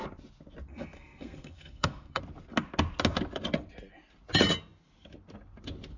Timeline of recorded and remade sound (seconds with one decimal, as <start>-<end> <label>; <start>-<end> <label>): 0.0-0.7 recorded; 0.7-2.2 remade; 2.2-6.0 recorded